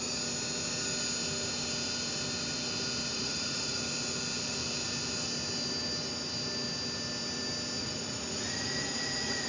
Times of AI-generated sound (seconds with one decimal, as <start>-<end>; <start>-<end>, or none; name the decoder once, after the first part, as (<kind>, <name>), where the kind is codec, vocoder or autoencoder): 3.1-3.8 (vocoder, Vocos); 7.8-9.5